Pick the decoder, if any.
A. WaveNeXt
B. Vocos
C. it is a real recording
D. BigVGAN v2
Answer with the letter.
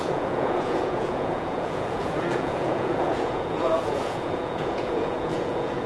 B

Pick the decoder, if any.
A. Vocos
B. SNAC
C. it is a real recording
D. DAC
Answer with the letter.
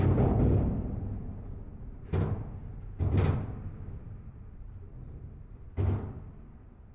C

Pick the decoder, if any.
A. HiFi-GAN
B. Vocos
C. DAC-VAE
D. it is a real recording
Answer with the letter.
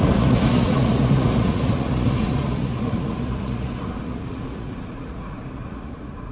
B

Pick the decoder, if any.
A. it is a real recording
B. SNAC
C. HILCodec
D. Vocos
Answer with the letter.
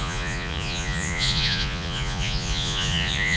D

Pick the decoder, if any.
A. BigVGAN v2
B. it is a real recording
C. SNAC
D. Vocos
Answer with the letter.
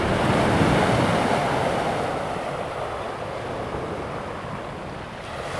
B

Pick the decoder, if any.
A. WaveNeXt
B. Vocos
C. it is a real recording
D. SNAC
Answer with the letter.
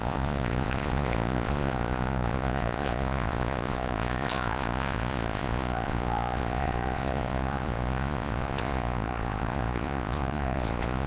B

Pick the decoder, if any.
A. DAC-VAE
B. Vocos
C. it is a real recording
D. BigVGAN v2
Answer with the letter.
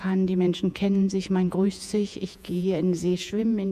B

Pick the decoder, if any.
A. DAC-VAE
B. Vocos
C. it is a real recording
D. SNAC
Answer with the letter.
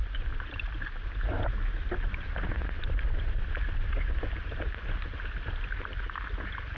C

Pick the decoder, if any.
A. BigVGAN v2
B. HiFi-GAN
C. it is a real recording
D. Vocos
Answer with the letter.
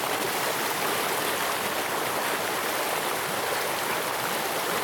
C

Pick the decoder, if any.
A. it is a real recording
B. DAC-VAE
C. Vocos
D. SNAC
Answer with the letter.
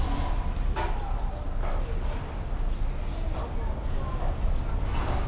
A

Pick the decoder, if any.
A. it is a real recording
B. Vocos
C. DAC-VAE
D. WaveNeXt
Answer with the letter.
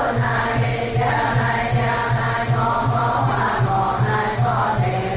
A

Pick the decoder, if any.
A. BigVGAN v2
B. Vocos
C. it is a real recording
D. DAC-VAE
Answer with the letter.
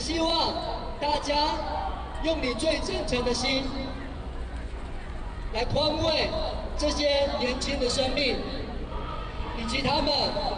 B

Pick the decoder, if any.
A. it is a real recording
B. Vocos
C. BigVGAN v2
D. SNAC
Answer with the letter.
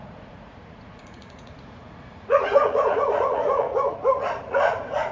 B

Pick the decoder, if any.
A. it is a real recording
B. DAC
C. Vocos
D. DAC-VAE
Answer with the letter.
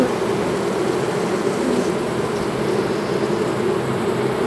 A